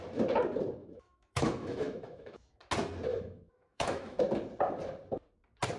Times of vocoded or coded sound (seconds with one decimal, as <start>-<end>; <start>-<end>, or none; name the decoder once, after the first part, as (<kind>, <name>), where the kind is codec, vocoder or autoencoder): 0.8-2.6 (autoencoder, DAC-VAE); 3.1-4.2